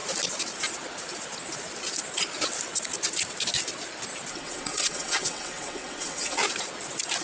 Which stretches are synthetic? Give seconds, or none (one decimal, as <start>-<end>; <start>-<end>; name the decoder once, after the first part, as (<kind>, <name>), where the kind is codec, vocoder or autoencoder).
4.3-6.4 (vocoder, WaveNeXt)